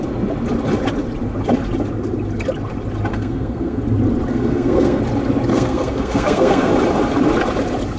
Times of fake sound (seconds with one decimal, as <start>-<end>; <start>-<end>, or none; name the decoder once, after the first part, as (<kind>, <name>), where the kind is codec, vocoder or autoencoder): 3.1-3.8 (codec, SNAC); 4.3-5.0; 5.5-6.7